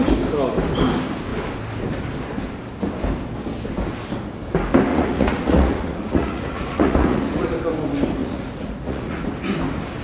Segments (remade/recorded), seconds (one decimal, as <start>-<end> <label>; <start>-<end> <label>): 0.0-4.9 recorded; 4.9-7.5 remade; 7.5-8.2 recorded; 8.2-9.3 remade; 9.3-10.0 recorded